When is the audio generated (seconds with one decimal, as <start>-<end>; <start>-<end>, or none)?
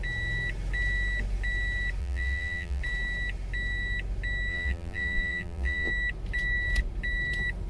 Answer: 2.0-2.8; 4.5-5.9